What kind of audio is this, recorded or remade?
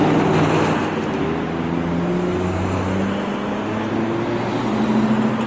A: recorded